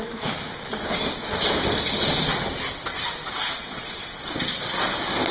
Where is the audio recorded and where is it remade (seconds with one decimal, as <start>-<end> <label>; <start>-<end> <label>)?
0.0-3.5 recorded; 3.5-4.2 remade; 4.2-5.3 recorded